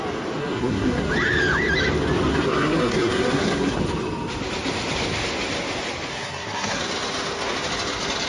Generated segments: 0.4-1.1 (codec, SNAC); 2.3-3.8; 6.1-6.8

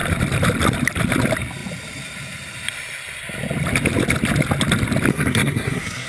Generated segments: 5.1-6.1 (codec, SNAC)

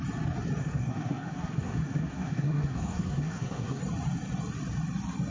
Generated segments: 0.6-3.8 (codec, SNAC)